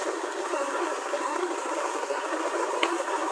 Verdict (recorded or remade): remade